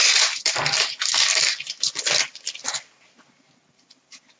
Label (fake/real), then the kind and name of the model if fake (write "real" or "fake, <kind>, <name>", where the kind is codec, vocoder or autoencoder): real